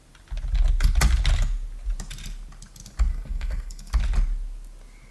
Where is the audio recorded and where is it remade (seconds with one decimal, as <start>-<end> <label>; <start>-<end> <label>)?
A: 0.0-3.1 recorded; 3.1-3.9 remade; 3.9-5.1 recorded